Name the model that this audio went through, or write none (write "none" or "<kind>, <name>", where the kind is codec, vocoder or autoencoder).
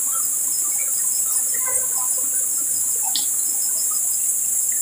none